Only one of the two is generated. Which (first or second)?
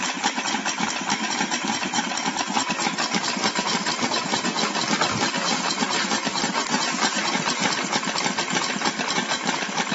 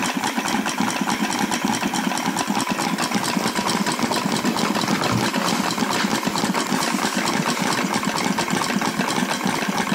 first